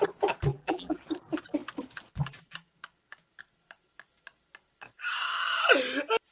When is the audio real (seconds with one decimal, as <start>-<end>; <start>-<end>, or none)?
0.0-0.5; 1.0-6.3